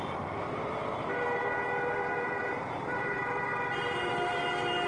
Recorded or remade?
remade